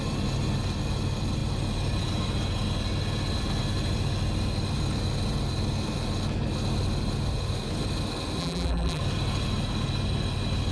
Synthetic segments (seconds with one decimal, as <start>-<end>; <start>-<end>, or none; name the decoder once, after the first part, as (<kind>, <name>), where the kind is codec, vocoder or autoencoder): 8.4-9.0 (vocoder, BigVGAN v2)